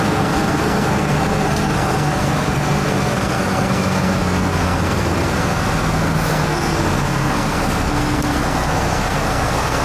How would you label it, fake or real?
fake